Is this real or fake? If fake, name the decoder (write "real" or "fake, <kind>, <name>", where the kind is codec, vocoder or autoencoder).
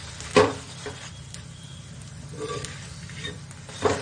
real